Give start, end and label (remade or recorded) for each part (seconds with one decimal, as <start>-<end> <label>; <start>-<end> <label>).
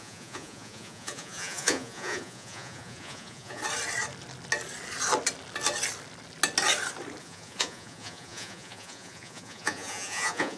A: 0.0-3.6 remade; 3.6-7.2 recorded; 7.2-10.6 remade